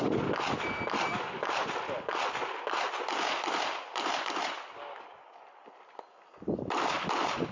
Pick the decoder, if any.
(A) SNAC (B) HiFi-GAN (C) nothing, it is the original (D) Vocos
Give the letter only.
C